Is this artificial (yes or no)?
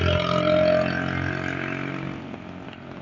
no